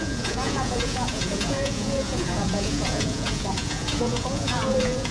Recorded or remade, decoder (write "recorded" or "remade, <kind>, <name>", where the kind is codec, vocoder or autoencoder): remade, vocoder, Vocos